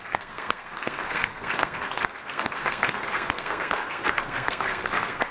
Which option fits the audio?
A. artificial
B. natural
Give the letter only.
A